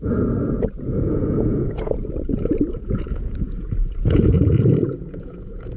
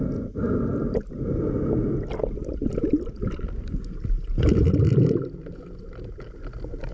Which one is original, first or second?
second